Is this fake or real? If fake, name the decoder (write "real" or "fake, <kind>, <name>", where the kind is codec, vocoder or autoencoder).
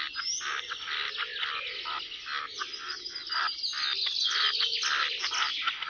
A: real